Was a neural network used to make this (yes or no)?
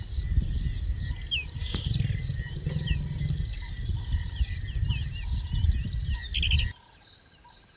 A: no